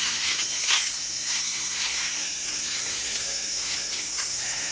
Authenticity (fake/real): fake